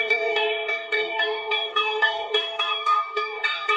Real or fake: fake